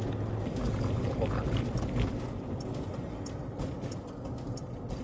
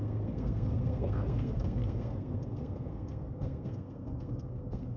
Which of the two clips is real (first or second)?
first